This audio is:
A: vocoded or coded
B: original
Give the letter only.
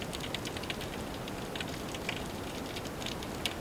B